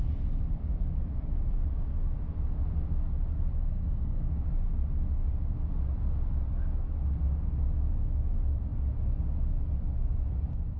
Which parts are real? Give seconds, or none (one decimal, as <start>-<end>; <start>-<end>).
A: 0.0-3.3; 4.3-10.8